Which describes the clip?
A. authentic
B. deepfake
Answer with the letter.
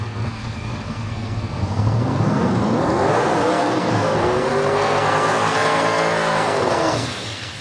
B